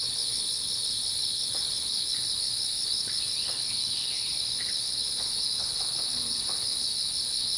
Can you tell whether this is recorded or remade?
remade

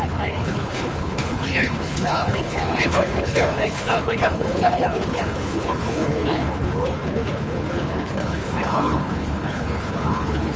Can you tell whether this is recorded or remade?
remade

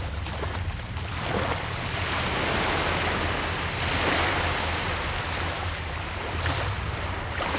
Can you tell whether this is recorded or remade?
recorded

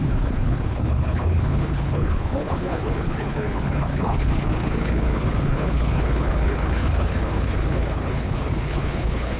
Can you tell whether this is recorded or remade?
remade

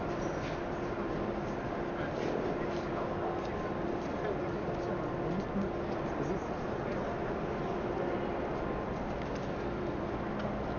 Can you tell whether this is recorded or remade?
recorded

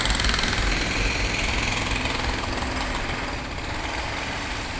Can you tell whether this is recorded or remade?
recorded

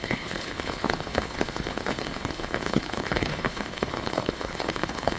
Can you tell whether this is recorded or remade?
remade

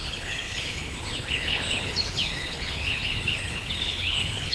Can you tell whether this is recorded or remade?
remade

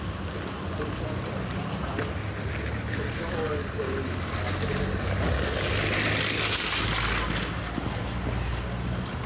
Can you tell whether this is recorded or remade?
recorded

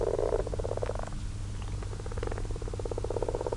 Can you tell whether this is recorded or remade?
recorded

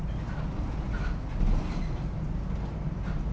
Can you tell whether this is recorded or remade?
recorded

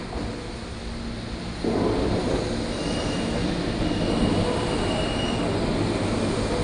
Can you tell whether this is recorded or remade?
recorded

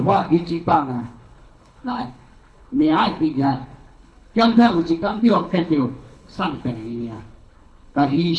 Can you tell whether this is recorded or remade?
remade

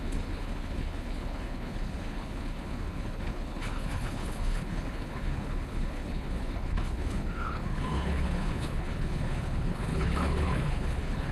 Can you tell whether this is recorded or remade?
remade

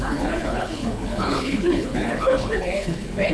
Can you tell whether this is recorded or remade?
remade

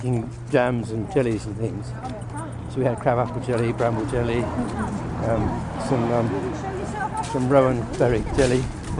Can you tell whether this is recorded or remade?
recorded